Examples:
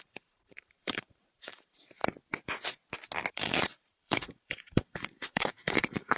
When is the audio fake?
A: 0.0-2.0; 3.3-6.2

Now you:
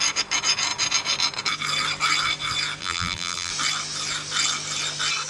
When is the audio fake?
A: 2.8-3.5